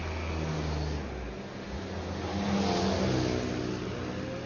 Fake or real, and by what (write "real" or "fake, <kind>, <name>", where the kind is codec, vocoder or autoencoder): real